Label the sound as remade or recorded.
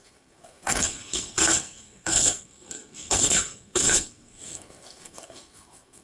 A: remade